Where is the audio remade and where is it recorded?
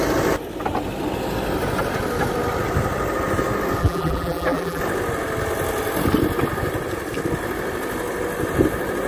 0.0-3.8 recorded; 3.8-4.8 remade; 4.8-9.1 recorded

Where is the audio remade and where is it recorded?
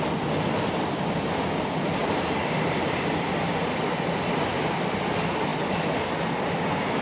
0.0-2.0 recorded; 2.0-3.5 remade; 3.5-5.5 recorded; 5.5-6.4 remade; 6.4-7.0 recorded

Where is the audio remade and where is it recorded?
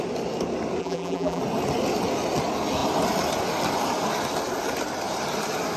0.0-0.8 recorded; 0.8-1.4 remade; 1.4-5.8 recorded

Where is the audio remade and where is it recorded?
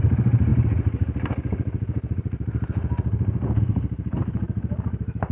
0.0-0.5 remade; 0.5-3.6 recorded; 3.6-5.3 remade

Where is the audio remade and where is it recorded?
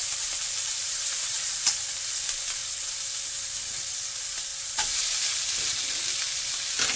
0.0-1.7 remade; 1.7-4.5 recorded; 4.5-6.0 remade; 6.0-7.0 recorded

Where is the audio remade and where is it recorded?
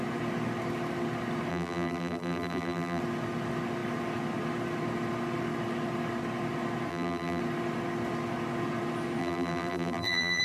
0.0-1.5 recorded; 1.5-3.0 remade; 3.0-6.9 recorded; 6.9-7.4 remade; 7.4-9.2 recorded; 9.2-10.4 remade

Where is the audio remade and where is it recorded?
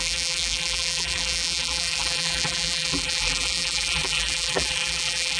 0.0-5.4 remade